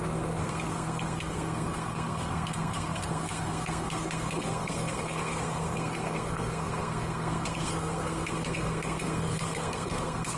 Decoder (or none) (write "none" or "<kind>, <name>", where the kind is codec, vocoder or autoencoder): codec, SNAC